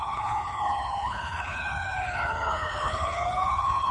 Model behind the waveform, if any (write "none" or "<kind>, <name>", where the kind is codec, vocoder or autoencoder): codec, HILCodec